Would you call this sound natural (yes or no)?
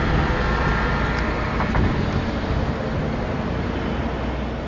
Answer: yes